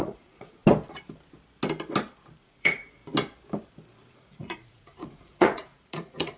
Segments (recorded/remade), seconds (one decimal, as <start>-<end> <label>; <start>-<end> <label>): 0.0-0.6 remade; 0.6-2.4 recorded; 2.4-3.0 remade; 3.0-4.1 recorded; 4.1-6.4 remade